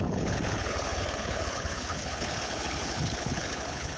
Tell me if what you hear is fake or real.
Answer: fake